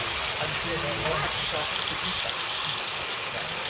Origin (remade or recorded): recorded